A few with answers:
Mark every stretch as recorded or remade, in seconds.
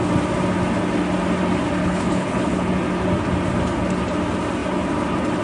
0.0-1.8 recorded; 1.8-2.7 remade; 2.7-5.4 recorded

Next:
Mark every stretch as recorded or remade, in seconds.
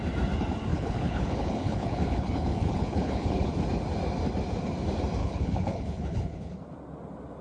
0.0-0.7 recorded; 0.7-3.5 remade; 3.5-5.2 recorded; 5.2-6.5 remade; 6.5-7.4 recorded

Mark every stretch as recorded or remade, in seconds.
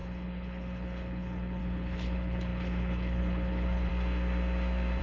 0.0-3.9 remade; 3.9-5.0 recorded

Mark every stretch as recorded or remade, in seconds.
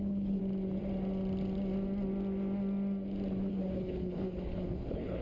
0.0-0.4 remade; 0.4-3.5 recorded; 3.5-5.2 remade